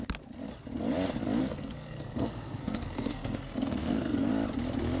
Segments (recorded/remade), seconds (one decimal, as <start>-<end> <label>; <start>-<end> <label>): 0.0-1.4 recorded; 1.4-4.3 remade; 4.3-5.0 recorded